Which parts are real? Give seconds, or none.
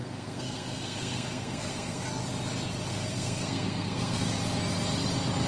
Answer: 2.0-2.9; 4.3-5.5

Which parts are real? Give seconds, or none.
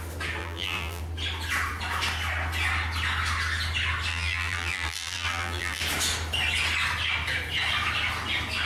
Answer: 0.0-0.4; 1.0-4.1; 5.8-8.7